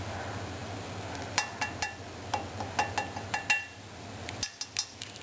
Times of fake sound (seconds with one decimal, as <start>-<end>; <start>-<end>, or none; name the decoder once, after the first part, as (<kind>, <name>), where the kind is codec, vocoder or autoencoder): none